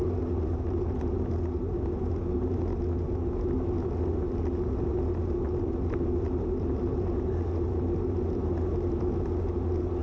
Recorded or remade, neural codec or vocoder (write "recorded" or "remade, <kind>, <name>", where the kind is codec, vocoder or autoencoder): recorded